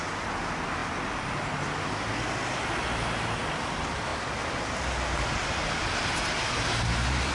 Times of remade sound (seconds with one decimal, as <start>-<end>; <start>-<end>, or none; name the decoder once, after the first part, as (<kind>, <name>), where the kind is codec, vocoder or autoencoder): none